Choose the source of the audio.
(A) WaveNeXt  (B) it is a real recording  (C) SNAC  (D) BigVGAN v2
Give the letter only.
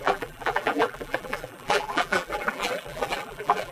D